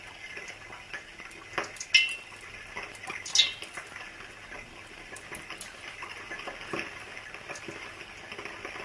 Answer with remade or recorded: recorded